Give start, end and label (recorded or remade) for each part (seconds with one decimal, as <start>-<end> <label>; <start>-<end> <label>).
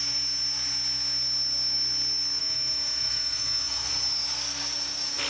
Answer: 0.0-2.4 recorded; 2.4-3.9 remade; 3.9-5.3 recorded